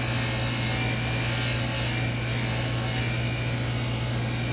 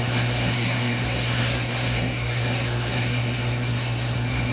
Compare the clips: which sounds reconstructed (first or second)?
second